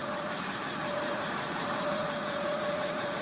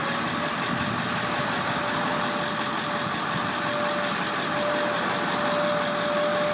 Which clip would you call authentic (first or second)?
second